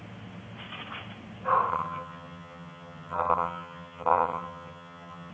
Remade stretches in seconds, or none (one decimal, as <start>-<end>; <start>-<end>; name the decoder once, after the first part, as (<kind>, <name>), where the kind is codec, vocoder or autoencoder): 1.7-5.3 (vocoder, HiFi-GAN)